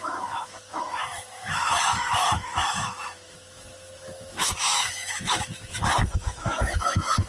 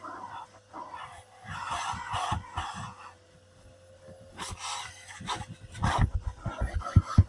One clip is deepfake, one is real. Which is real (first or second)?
second